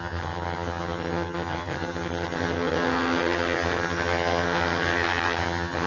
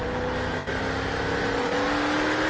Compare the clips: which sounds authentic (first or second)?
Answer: second